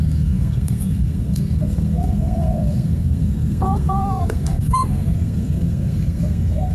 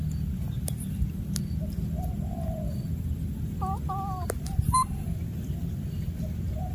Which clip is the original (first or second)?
second